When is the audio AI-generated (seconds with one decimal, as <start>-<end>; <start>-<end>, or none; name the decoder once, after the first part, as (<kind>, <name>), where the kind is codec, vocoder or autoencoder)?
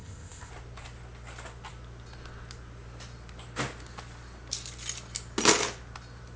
0.0-0.5 (codec, ZipCodec)